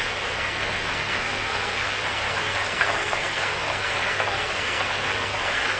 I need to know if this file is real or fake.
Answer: fake